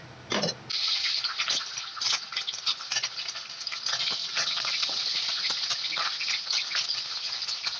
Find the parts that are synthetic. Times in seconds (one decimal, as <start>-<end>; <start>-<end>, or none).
4.2-5.0